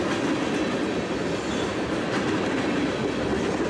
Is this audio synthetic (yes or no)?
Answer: no